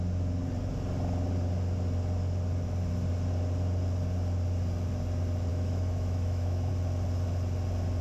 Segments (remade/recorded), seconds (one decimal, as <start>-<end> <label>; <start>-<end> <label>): 0.0-5.5 recorded; 5.5-6.7 remade; 6.7-8.0 recorded